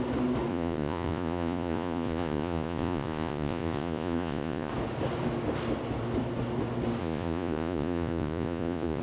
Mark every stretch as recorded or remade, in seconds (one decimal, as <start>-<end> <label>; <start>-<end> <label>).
0.0-0.5 recorded; 0.5-4.7 remade; 4.7-7.0 recorded; 7.0-9.0 remade